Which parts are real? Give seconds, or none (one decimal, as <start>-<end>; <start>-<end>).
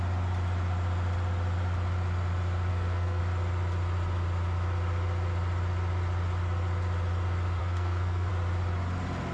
0.0-2.7; 3.2-7.6; 8.3-9.3